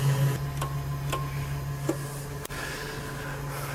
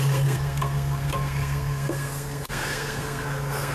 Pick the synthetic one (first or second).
second